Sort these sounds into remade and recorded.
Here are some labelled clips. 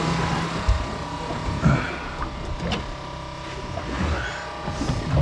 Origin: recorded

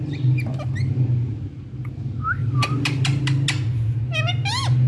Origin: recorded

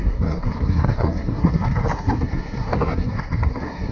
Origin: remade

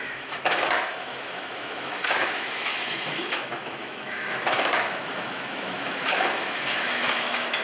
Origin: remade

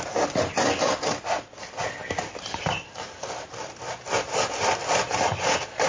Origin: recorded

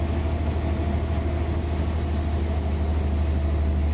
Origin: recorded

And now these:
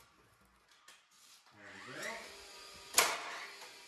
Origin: recorded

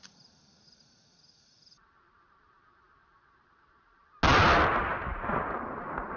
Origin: recorded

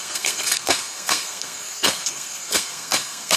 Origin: remade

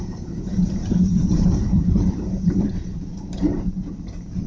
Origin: remade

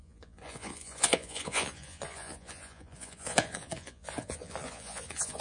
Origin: remade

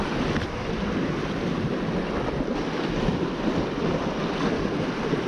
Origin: recorded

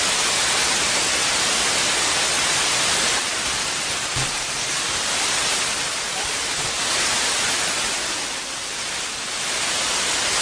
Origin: recorded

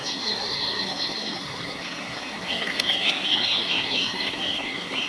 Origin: remade